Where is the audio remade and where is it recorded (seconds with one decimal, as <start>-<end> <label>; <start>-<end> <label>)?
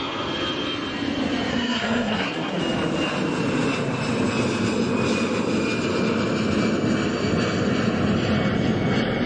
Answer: 0.0-1.5 recorded; 1.5-2.6 remade; 2.6-9.3 recorded